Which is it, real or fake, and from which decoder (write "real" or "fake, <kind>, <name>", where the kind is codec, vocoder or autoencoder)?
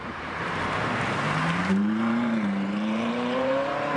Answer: fake, vocoder, BigVGAN v2